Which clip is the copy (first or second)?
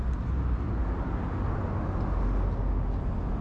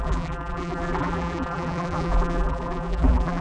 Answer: second